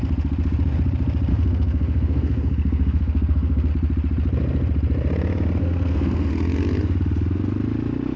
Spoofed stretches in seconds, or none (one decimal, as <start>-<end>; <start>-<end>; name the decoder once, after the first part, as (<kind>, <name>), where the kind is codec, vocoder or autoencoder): 1.3-3.7 (codec, SNAC); 5.6-6.3